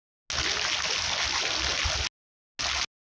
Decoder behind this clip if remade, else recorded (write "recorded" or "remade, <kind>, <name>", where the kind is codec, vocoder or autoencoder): recorded